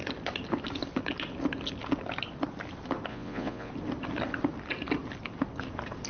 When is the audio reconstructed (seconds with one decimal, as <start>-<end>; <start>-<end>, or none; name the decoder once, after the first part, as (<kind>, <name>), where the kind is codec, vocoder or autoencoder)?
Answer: 3.1-3.7 (vocoder, Vocos)